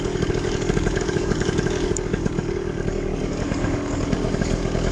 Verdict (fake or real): fake